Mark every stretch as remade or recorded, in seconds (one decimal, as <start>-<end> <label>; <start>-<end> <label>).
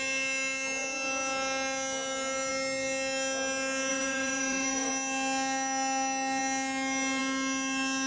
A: 0.0-3.9 recorded; 3.9-4.9 remade; 4.9-8.1 recorded